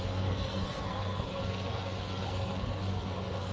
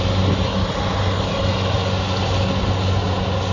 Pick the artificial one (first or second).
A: first